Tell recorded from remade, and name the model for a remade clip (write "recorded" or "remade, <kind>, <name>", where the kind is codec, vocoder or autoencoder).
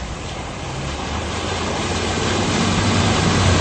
remade, vocoder, BigVGAN v2